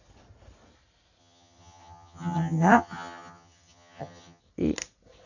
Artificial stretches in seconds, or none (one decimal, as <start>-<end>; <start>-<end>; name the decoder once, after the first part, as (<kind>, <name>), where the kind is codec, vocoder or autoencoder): 1.2-4.4 (vocoder, HiFi-GAN)